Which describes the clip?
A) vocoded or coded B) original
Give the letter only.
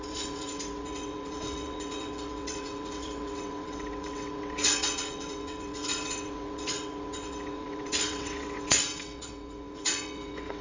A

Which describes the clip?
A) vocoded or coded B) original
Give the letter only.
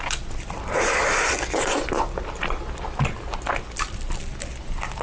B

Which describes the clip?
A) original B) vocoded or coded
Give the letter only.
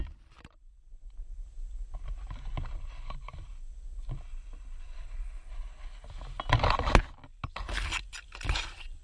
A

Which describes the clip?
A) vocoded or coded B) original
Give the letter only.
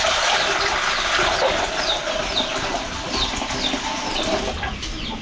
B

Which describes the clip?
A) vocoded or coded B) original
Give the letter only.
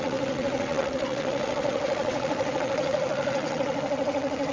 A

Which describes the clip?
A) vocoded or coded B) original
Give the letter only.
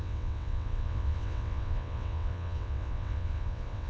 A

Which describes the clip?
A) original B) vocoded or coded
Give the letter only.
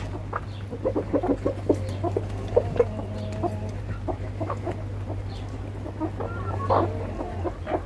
A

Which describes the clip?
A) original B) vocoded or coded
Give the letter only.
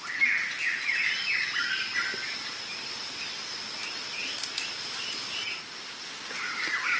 A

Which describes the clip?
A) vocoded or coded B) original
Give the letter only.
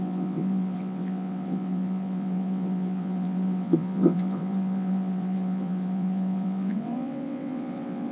A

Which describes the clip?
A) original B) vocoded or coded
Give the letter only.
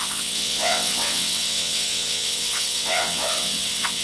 B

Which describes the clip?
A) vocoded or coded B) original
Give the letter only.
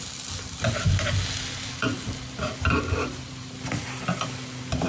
B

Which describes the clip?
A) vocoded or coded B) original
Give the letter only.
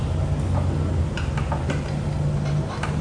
B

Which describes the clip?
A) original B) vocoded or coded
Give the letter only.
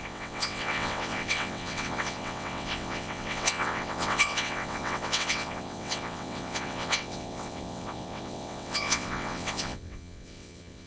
B